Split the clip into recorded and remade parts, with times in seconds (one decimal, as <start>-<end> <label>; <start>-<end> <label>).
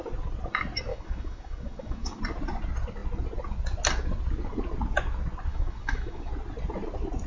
0.0-0.9 recorded; 0.9-2.2 remade; 2.2-5.5 recorded; 5.5-6.3 remade; 6.3-7.3 recorded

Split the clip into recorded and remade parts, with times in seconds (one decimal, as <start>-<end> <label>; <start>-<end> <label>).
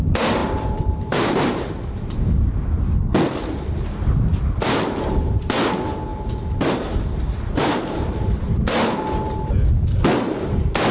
0.0-0.4 recorded; 0.4-2.6 remade; 2.6-4.3 recorded; 4.3-5.3 remade; 5.3-6.1 recorded; 6.1-8.5 remade; 8.5-10.9 recorded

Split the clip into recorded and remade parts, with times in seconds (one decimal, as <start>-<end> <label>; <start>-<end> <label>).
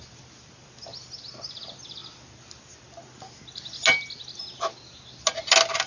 0.0-5.9 recorded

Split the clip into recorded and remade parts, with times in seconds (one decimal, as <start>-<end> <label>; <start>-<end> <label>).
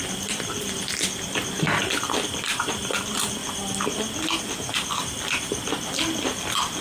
0.0-3.4 remade; 3.4-4.4 recorded; 4.4-6.8 remade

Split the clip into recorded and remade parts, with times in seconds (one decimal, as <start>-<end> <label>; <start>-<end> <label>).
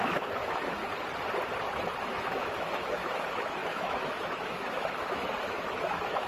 0.0-0.8 remade; 0.8-2.0 recorded; 2.0-6.3 remade